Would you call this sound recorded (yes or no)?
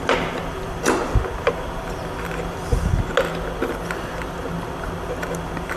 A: yes